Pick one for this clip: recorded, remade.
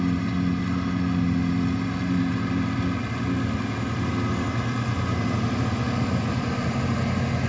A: recorded